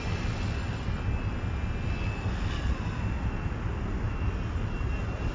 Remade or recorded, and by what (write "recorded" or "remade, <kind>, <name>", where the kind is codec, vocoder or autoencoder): recorded